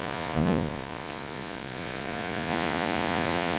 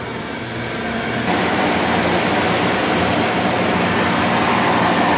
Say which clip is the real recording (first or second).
second